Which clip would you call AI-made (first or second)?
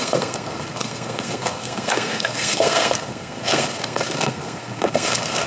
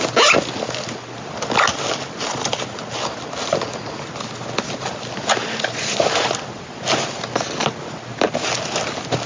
first